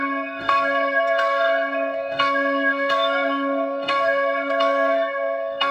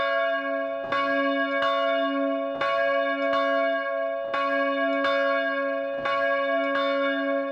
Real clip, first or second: second